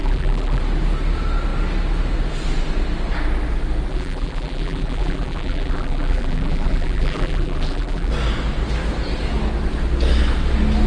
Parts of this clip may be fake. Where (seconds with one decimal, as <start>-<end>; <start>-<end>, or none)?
0.0-0.6; 3.9-8.1